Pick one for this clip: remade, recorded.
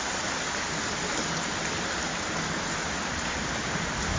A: recorded